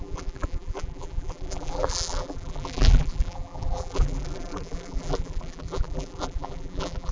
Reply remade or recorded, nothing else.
remade